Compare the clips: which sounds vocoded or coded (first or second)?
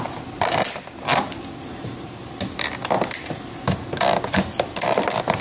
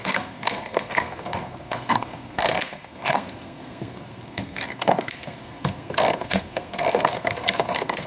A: second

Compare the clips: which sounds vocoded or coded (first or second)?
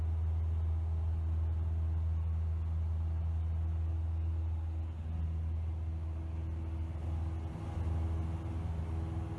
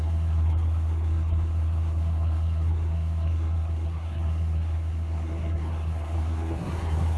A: second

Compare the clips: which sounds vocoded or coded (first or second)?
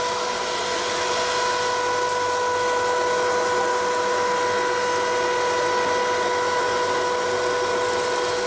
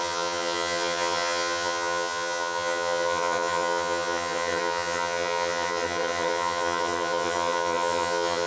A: second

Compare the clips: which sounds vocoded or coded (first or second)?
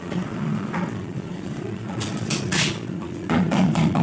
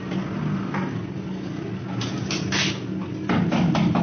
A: first